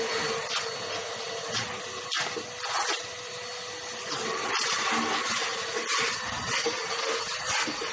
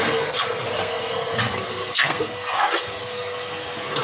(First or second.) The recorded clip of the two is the first